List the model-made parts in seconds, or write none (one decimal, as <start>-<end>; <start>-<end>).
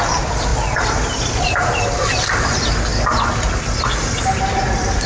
none